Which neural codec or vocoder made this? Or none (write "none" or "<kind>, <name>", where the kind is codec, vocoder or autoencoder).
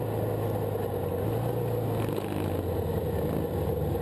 none